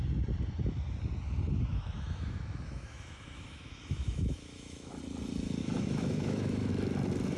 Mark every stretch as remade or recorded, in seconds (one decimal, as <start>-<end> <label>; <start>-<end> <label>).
0.0-1.7 recorded; 1.7-5.0 remade; 5.0-5.6 recorded; 5.6-6.7 remade; 6.7-7.4 recorded